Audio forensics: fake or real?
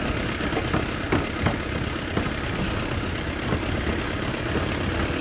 real